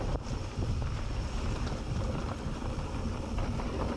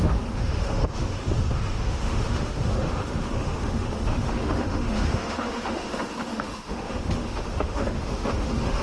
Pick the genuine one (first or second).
first